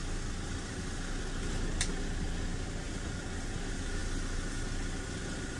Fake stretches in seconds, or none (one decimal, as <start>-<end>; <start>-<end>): none